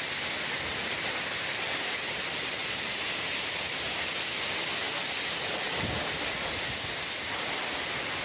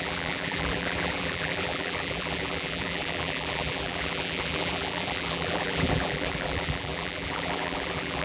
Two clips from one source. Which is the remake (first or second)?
second